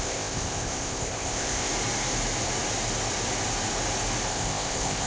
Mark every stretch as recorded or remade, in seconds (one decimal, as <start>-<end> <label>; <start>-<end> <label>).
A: 0.0-1.7 remade; 1.7-4.3 recorded; 4.3-5.1 remade